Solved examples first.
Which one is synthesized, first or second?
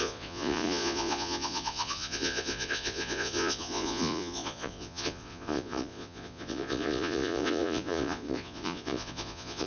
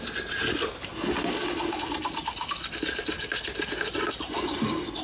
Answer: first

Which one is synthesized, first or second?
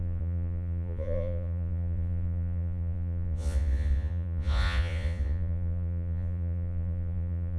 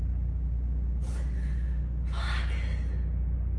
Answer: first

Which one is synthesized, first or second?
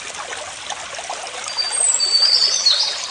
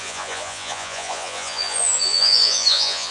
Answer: second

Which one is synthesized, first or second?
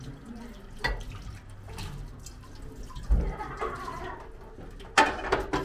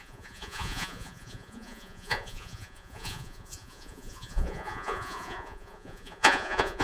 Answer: second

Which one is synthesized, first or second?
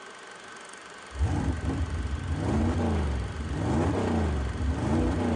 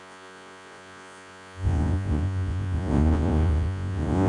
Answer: second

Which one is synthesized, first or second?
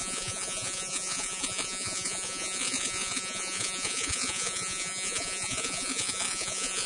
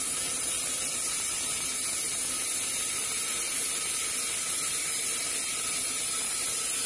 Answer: first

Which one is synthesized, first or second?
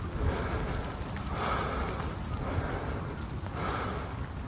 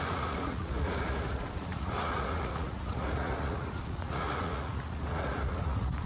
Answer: second